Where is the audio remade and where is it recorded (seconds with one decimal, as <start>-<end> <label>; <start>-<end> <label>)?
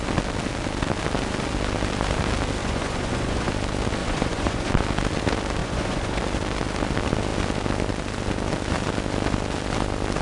0.0-2.6 recorded; 2.6-3.5 remade; 3.5-4.0 recorded; 4.0-4.7 remade; 4.7-5.6 recorded; 5.6-6.2 remade; 6.2-10.2 recorded